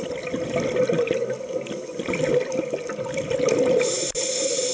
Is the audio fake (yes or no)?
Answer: no